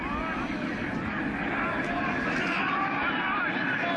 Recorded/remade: recorded